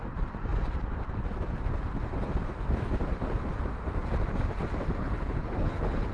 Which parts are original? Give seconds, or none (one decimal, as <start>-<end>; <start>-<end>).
0.0-5.0